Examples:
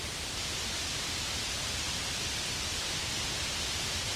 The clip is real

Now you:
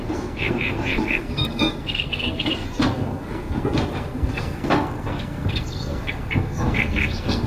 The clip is fake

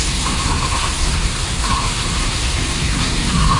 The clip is fake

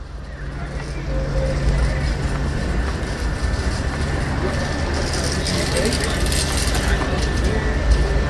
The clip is real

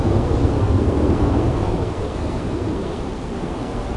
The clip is fake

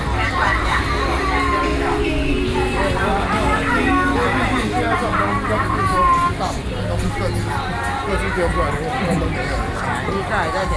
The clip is real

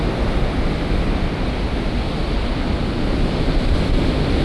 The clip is real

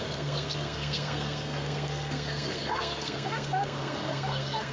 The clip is fake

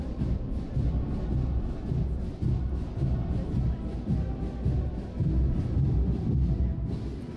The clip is real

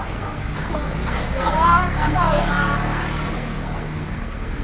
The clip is fake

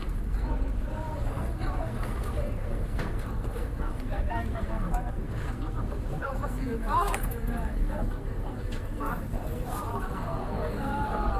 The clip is fake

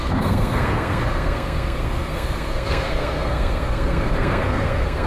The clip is fake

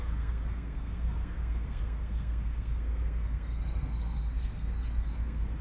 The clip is fake